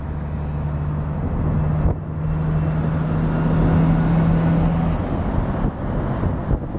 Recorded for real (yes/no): yes